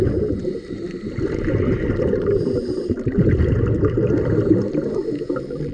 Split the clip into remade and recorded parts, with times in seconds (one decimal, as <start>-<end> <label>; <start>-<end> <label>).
0.0-5.7 recorded